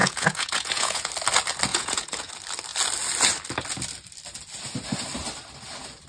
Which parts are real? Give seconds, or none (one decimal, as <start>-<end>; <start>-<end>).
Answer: 1.1-1.7; 2.3-6.1